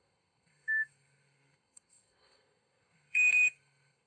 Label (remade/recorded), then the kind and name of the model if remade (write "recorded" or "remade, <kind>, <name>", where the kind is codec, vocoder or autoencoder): remade, codec, SNAC